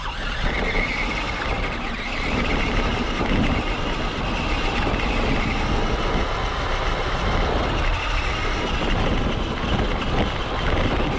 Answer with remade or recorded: recorded